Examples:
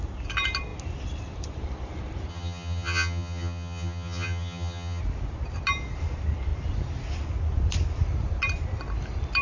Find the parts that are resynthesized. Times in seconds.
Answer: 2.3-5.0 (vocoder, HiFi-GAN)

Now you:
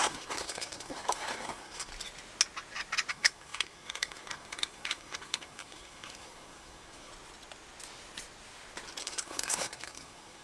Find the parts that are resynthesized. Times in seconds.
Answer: 0.0-1.9 (codec, SNAC); 3.1-7.1; 9.0-10.4

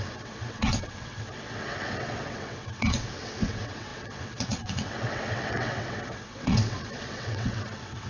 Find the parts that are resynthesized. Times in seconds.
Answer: 0.0-8.1 (vocoder, WaveNeXt)

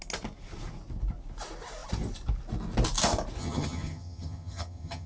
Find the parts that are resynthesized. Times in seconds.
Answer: 3.4-5.1 (vocoder, HiFi-GAN)

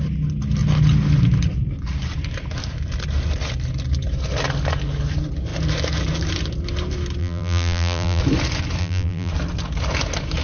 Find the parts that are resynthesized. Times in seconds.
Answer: 7.2-8.2 (vocoder, BigVGAN v2); 8.8-9.3

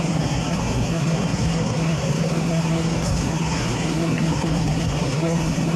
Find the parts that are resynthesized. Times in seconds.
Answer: 0.0-5.8 (codec, SNAC)